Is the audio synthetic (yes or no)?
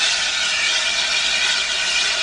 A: no